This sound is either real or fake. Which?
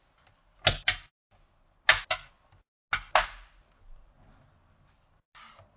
real